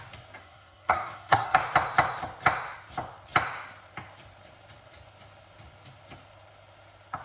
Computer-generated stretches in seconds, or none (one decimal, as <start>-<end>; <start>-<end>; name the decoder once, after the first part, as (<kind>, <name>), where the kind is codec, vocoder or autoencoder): 0.4-1.6 (codec, SNAC)